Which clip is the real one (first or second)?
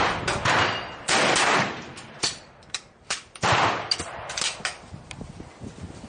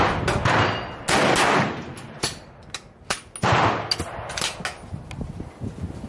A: second